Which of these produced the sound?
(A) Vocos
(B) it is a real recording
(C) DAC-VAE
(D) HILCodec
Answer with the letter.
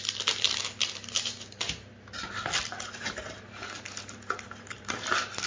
B